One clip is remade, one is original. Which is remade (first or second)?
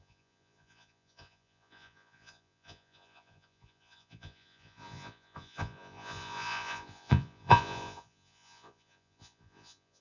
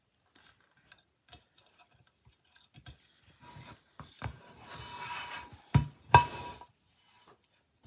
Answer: first